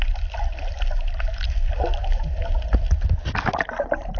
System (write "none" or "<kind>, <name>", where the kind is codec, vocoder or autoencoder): none